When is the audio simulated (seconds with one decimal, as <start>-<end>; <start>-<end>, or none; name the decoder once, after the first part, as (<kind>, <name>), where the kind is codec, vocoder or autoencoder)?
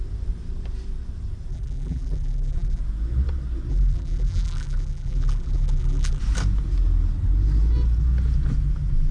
1.5-2.8 (vocoder, BigVGAN v2); 3.7-6.2